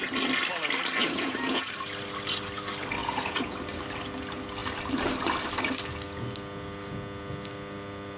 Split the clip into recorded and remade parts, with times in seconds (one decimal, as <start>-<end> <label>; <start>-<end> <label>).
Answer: 0.0-1.0 recorded; 1.0-1.7 remade; 1.7-3.0 recorded; 3.0-3.6 remade; 3.6-8.2 recorded